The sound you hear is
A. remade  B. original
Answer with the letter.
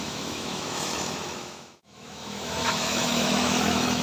A